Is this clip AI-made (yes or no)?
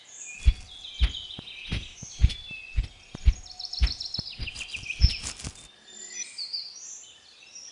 no